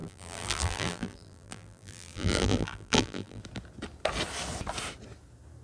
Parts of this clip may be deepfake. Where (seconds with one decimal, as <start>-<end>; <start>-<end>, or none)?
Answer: 0.0-3.4